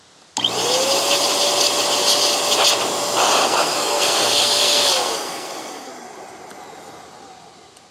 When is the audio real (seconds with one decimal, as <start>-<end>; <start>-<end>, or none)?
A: 0.0-3.4; 5.9-7.9